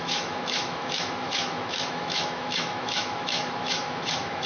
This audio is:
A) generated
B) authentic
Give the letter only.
A